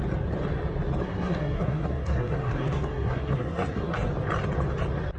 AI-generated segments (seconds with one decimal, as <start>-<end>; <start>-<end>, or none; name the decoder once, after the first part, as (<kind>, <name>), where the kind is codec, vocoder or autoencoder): 1.0-4.1 (codec, SNAC)

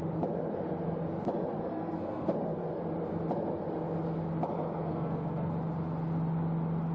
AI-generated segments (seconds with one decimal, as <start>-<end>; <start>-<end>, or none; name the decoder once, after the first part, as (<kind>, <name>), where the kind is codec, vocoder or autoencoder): 1.5-2.8 (codec, SNAC); 4.9-5.5